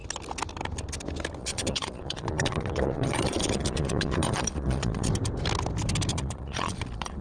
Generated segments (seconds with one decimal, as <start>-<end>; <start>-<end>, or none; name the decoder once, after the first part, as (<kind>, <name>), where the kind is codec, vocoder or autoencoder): 1.4-5.1 (vocoder, Vocos); 6.1-7.2